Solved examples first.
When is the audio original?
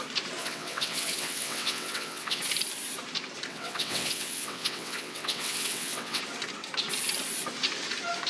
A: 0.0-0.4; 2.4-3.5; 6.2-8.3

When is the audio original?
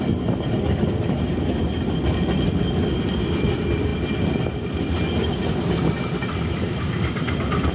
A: 0.0-7.7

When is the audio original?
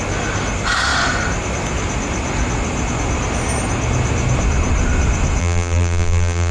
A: 0.0-5.4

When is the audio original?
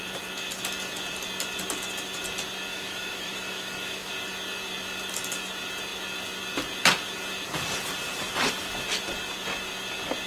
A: 0.0-2.7; 4.1-10.3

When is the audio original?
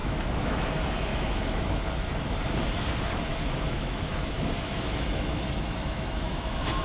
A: 0.7-1.1; 1.8-3.3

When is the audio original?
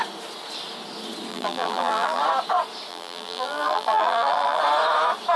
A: 0.0-1.3; 2.2-2.9; 4.6-5.4